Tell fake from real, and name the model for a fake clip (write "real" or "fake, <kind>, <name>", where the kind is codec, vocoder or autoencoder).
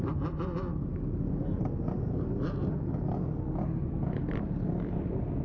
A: real